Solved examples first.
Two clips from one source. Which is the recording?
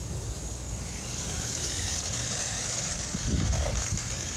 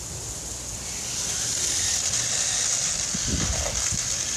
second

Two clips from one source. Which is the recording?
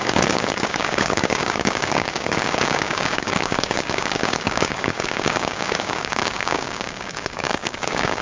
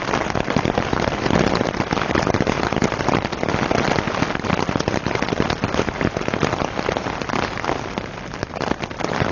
second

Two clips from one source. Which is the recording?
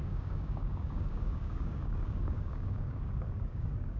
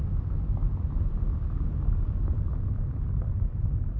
second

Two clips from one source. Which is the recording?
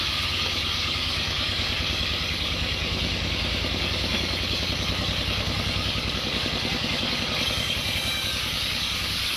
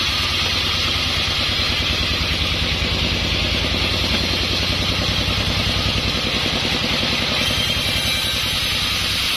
second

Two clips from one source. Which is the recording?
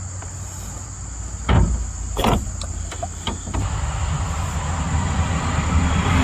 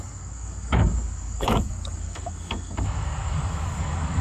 first